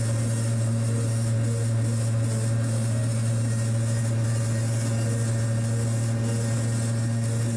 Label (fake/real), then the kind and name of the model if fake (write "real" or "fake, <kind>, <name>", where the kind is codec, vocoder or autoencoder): real